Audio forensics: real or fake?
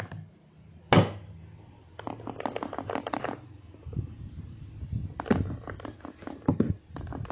real